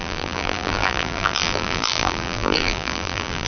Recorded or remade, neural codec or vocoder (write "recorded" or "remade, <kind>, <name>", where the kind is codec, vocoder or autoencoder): remade, vocoder, BigVGAN v2